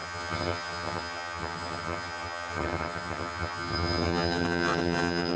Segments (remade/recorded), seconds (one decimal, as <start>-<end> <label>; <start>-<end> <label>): 0.0-5.4 remade